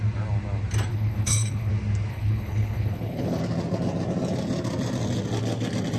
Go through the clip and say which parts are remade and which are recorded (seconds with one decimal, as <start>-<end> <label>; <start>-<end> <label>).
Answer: 0.0-0.9 recorded; 0.9-1.7 remade; 1.7-2.1 recorded; 2.1-3.4 remade; 3.4-6.0 recorded